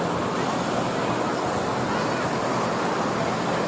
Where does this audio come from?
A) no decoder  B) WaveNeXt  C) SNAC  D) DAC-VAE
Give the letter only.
A